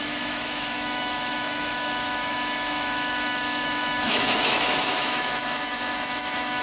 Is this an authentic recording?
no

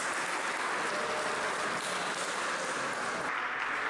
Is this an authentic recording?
yes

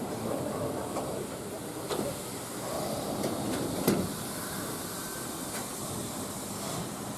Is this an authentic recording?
no